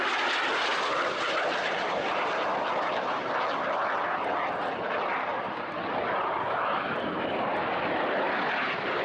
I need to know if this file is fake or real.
real